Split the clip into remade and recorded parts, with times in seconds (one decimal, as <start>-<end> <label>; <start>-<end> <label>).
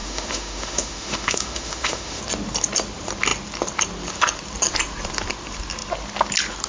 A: 0.0-2.2 remade; 2.2-6.7 recorded